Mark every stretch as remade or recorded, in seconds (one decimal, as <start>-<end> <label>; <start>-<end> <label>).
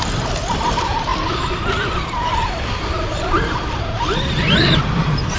0.0-5.4 recorded